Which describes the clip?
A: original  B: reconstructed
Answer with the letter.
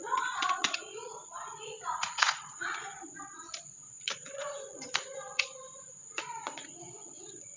B